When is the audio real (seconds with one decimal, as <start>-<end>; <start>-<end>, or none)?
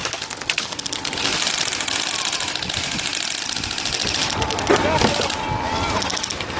0.0-6.6